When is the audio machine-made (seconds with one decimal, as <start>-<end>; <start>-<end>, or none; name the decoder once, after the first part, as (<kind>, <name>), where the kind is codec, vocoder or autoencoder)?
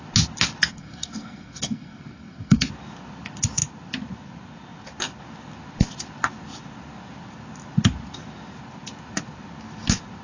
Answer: 0.7-2.7 (codec, SNAC)